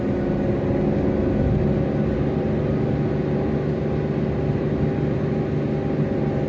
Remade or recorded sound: recorded